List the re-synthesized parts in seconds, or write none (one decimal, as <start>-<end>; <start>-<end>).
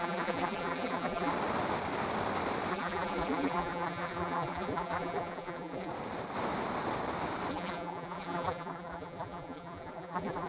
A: 0.0-1.3; 2.7-5.9; 7.5-10.5